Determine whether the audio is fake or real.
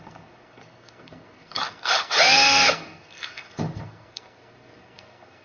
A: fake